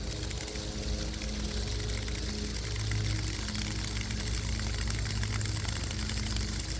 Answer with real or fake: real